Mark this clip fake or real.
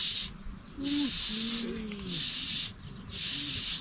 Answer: real